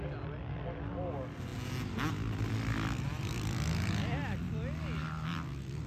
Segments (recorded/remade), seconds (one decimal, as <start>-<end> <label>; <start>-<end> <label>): 0.0-5.9 recorded